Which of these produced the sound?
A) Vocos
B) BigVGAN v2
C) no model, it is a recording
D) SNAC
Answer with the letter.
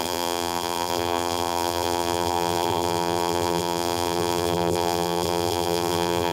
B